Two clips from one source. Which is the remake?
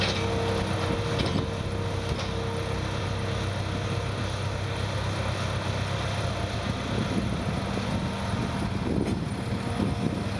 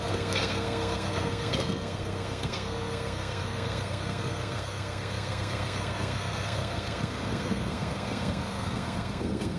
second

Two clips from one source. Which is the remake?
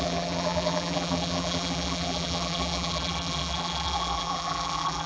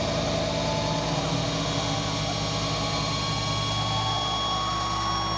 first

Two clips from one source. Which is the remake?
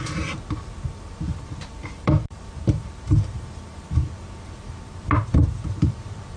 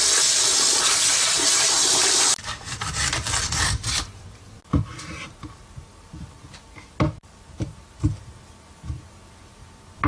first